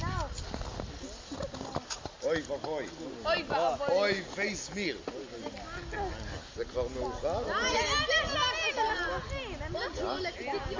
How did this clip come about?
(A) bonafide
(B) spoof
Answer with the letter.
A